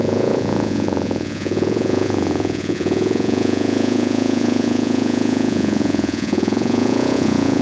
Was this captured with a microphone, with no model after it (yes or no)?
no